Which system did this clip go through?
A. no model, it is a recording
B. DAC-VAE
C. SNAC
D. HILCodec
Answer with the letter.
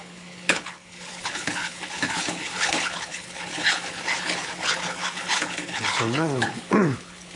D